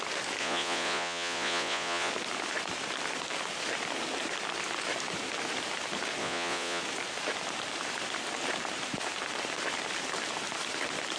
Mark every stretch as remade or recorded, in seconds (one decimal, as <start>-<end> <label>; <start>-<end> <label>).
0.0-0.4 recorded; 0.4-2.1 remade; 2.1-6.2 recorded; 6.2-6.8 remade; 6.8-11.2 recorded